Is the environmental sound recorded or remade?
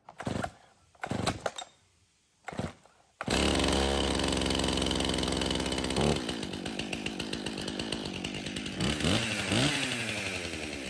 recorded